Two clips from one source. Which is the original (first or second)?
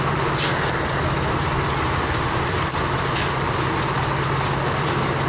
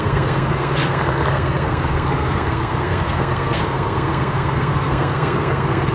first